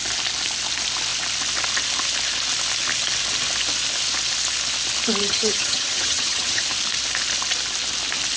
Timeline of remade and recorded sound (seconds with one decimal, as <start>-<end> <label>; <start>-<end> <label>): 0.0-5.2 recorded; 5.2-6.6 remade; 6.6-8.4 recorded